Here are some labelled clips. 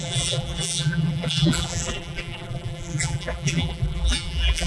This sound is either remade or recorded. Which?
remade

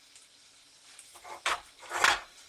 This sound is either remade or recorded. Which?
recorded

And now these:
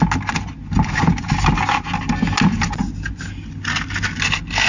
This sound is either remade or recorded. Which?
recorded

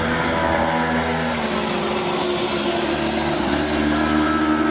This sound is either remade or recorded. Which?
recorded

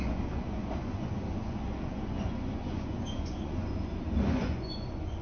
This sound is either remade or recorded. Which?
remade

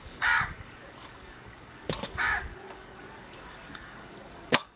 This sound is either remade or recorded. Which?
remade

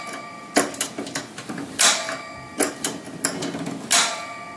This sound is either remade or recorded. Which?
recorded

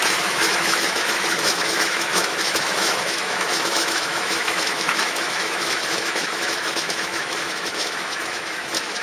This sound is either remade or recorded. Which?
remade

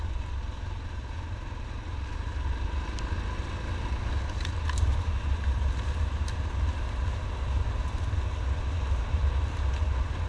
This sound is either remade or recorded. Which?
recorded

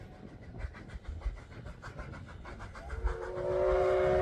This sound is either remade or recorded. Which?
recorded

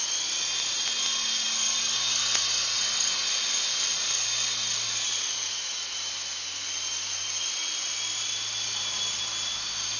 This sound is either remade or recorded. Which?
recorded